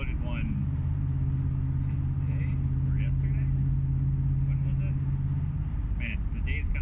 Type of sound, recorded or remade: recorded